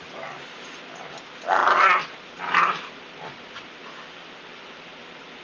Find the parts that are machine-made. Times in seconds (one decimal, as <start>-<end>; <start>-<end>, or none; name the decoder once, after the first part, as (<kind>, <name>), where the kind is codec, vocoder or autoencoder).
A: none